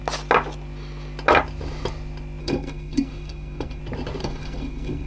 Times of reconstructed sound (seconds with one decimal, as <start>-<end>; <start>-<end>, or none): 2.4-3.8; 4.2-5.1